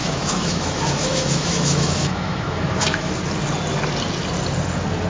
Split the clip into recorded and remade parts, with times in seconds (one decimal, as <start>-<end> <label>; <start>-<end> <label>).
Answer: 0.0-3.1 remade; 3.1-5.1 recorded